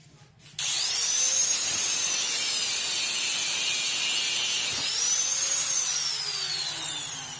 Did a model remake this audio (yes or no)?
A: no